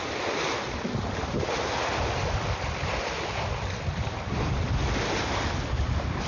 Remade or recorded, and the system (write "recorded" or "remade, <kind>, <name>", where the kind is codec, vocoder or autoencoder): recorded